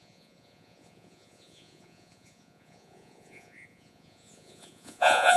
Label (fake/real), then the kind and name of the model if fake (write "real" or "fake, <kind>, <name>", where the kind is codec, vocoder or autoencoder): fake, vocoder, Vocos